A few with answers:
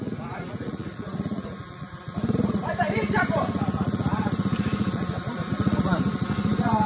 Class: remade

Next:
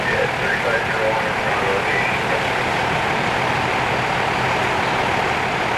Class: recorded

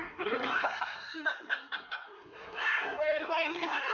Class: remade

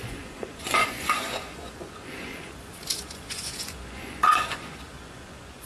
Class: remade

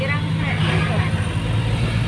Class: recorded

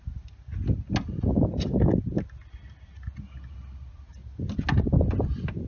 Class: recorded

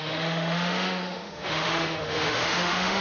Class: remade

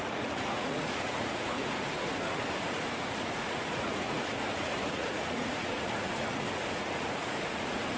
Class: remade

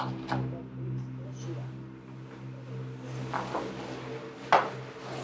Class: recorded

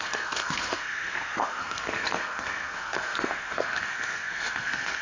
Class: remade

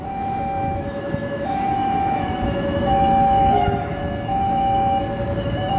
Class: remade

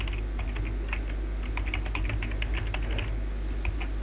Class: recorded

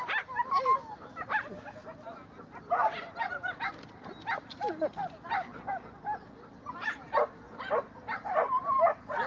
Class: recorded